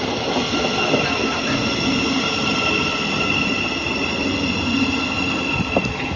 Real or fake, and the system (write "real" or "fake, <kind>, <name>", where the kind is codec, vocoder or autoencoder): real